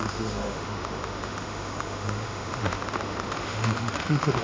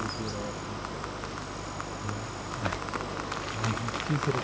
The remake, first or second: first